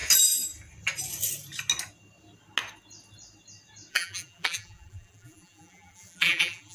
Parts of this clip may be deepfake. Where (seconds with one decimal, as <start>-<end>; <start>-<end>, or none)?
3.9-6.7